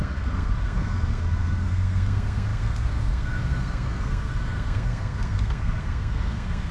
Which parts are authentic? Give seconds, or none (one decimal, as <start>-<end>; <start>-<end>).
none